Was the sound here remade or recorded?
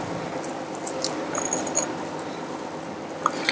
recorded